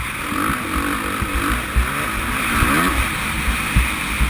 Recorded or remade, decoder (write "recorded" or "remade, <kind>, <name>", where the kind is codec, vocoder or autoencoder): recorded